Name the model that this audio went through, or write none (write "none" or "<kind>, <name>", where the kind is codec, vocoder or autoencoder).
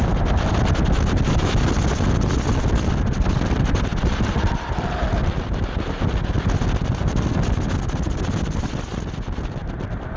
none